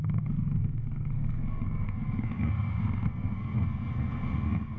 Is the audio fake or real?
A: fake